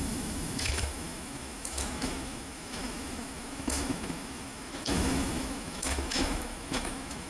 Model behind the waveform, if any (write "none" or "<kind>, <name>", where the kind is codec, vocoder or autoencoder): autoencoder, DAC-VAE